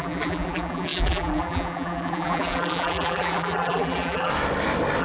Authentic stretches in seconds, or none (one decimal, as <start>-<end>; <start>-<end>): 4.3-5.0